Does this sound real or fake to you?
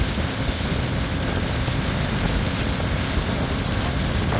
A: real